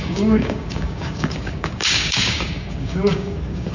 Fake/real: fake